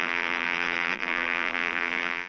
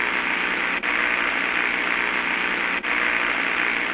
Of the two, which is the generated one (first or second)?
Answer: first